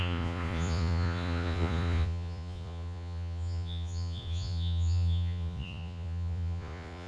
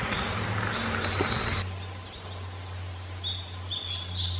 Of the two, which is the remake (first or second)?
first